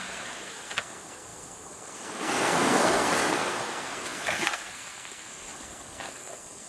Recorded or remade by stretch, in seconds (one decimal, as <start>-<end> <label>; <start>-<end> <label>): 0.0-6.7 remade